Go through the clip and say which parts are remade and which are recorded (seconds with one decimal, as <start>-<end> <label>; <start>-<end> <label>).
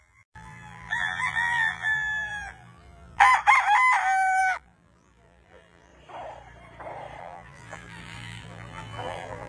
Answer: 0.0-3.3 remade; 3.3-4.4 recorded; 4.4-5.9 remade; 5.9-7.2 recorded; 7.2-9.5 remade